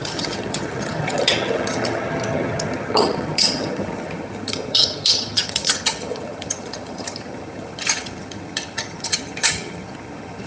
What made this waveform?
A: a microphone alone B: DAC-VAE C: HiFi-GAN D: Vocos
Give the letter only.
C